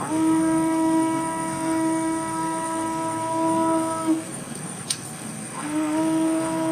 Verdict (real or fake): fake